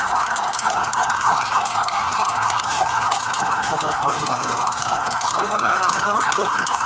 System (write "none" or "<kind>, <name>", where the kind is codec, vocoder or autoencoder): codec, SNAC